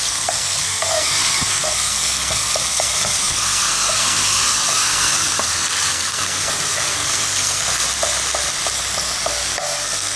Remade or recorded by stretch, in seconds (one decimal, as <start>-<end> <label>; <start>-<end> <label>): 0.0-7.8 remade; 7.8-9.2 recorded; 9.2-10.2 remade